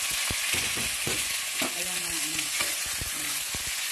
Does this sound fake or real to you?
fake